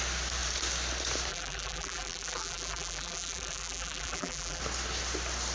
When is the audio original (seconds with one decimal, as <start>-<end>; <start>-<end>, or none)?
0.0-1.3; 4.6-5.5